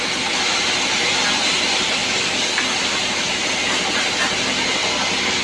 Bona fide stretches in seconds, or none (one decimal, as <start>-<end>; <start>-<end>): 0.0-2.0; 2.6-4.8